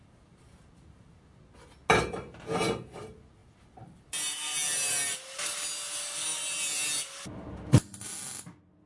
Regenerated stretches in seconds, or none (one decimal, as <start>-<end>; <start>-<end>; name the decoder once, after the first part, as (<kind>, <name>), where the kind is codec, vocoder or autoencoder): none